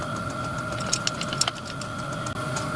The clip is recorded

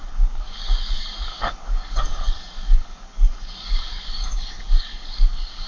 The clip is remade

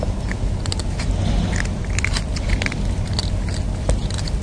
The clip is recorded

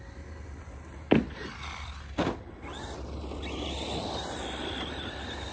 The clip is recorded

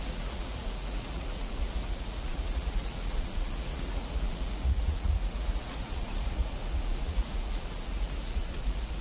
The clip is remade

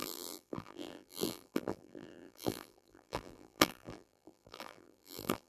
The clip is remade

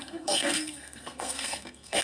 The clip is remade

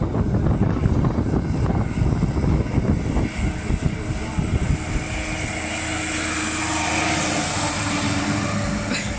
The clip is recorded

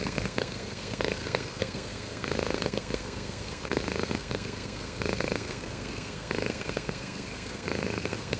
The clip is remade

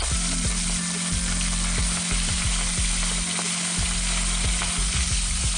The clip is recorded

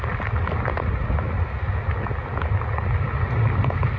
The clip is recorded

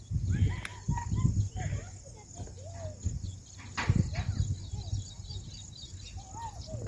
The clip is recorded